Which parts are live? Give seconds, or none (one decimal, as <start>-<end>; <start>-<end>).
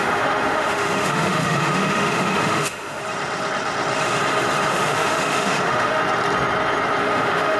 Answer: 3.0-4.7; 6.0-7.0